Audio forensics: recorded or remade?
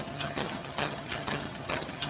remade